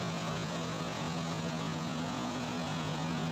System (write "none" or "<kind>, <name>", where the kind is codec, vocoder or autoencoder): vocoder, Vocos